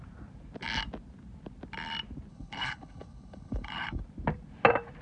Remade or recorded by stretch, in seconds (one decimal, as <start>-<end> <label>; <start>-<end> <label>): 0.0-2.3 recorded; 2.3-4.0 remade; 4.0-5.0 recorded